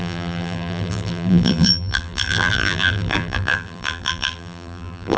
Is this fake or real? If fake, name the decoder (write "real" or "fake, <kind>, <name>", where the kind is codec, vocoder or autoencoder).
fake, vocoder, BigVGAN v2